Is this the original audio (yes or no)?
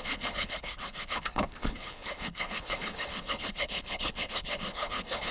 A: no